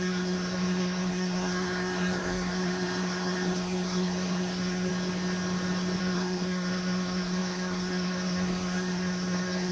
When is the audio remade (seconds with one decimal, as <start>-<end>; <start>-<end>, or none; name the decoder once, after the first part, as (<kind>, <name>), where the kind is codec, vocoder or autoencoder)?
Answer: 0.0-4.9 (codec, SNAC); 6.0-9.7